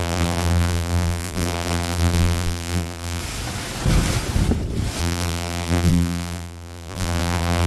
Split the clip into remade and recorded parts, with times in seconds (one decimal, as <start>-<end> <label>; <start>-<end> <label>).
0.0-3.2 remade; 3.2-5.0 recorded; 5.0-7.7 remade